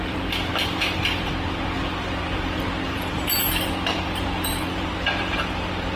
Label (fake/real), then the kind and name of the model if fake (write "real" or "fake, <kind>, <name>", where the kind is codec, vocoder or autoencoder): fake, vocoder, BigVGAN v2